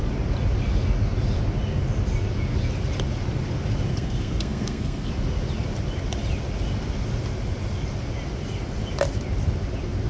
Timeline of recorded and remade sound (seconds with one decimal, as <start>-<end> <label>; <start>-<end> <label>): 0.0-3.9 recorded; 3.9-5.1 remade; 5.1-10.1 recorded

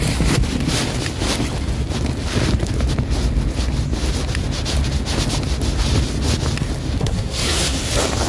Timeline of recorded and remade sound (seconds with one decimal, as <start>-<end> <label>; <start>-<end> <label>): 0.0-7.0 recorded; 7.0-7.8 remade; 7.8-8.3 recorded

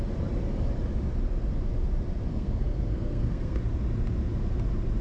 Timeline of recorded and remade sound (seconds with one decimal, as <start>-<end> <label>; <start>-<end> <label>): 0.0-2.3 recorded; 2.3-3.6 remade; 3.6-5.0 recorded

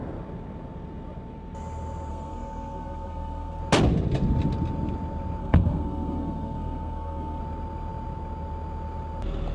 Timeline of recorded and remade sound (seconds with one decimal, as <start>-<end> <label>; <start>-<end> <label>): 0.0-2.1 recorded; 2.1-3.6 remade; 3.6-5.4 recorded; 5.4-7.4 remade; 7.4-9.5 recorded

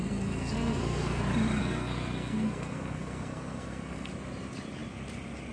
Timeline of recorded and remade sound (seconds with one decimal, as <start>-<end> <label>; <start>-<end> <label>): 0.0-1.2 remade; 1.2-1.6 recorded; 1.6-4.1 remade; 4.1-5.5 recorded